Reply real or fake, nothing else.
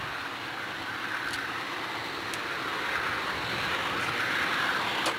real